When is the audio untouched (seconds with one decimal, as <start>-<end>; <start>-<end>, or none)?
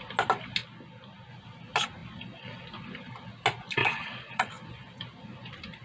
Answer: 0.0-3.8; 4.5-5.8